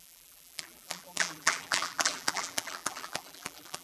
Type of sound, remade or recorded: remade